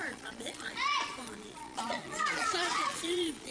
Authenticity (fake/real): fake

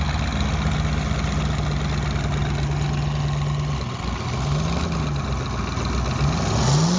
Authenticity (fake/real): real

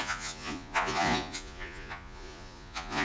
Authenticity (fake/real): fake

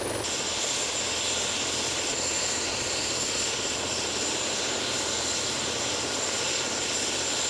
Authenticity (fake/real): real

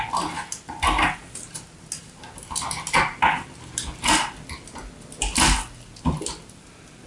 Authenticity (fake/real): real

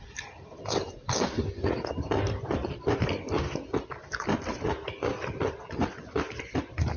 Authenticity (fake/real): real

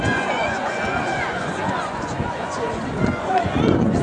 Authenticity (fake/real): fake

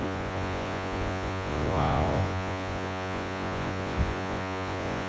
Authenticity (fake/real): fake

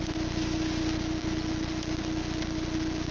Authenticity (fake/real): real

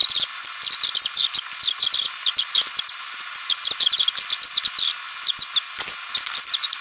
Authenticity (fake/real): real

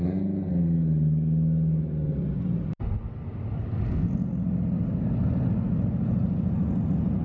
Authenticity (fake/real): real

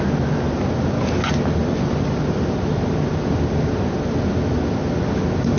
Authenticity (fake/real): real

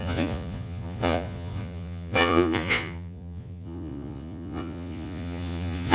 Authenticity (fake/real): fake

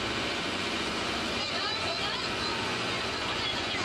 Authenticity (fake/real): fake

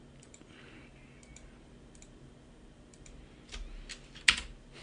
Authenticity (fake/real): real